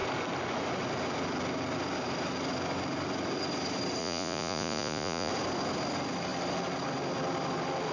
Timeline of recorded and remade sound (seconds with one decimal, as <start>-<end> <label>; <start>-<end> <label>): 0.0-4.0 recorded; 4.0-5.3 remade; 5.3-7.9 recorded